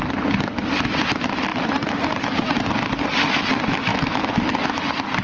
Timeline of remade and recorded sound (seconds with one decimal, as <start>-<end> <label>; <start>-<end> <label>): 0.0-3.9 recorded; 3.9-4.8 remade; 4.8-5.2 recorded